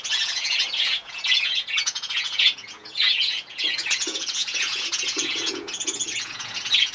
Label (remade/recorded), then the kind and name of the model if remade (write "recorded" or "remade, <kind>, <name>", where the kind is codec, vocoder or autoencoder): remade, vocoder, Vocos